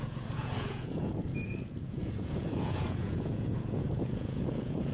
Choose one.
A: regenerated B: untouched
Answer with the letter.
A